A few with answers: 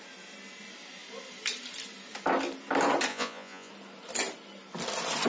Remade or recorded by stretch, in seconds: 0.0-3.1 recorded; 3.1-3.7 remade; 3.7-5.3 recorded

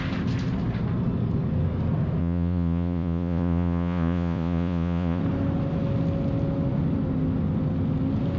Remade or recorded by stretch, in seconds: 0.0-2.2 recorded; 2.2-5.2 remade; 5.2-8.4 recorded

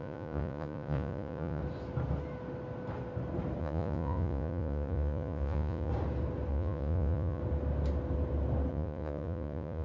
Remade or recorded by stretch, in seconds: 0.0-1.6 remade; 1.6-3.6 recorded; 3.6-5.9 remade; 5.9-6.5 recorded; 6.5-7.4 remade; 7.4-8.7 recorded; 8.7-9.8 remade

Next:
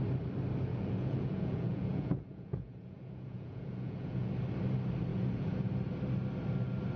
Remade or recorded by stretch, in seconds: 0.0-0.7 recorded; 0.7-4.3 remade; 4.3-5.1 recorded; 5.1-5.6 remade; 5.6-7.0 recorded